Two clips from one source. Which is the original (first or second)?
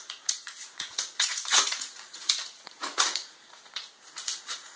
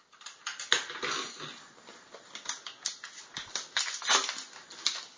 second